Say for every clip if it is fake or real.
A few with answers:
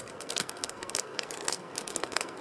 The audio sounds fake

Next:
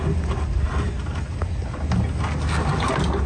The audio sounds real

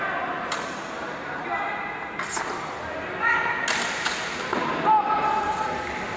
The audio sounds real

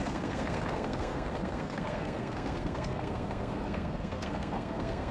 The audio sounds fake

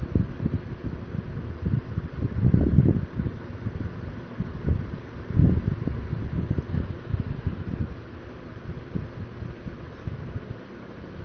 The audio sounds real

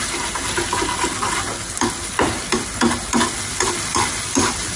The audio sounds real